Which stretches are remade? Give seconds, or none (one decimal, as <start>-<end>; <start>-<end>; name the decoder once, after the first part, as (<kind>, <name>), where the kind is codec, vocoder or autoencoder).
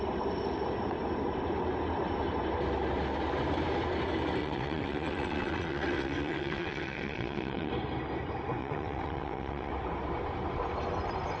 4.4-7.7 (vocoder, WaveNeXt); 8.6-9.7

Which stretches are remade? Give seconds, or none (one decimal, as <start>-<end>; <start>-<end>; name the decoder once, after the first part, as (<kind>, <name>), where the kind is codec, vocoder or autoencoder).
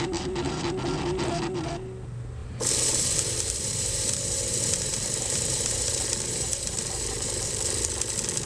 2.4-7.5 (vocoder, BigVGAN v2)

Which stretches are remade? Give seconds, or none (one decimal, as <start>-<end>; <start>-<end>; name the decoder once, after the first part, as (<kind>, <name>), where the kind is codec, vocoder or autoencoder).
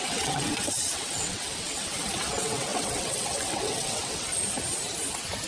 0.0-4.3 (vocoder, WaveNeXt)